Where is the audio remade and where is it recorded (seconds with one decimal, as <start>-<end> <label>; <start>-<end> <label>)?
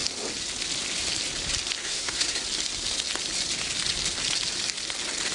0.0-1.8 recorded; 1.8-2.4 remade; 2.4-5.3 recorded